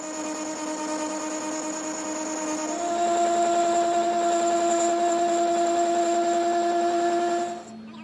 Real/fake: real